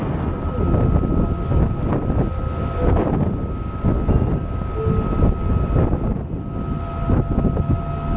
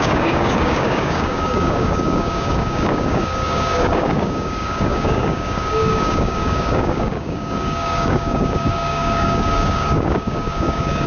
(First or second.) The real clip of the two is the first